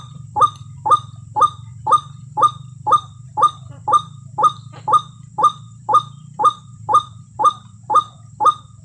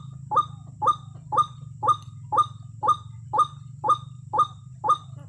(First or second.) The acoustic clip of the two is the second